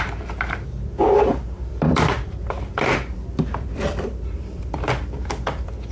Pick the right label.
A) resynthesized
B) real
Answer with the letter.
A